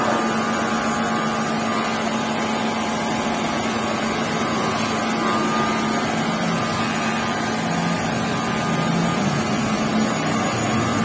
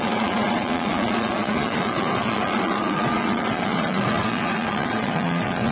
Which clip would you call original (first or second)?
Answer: first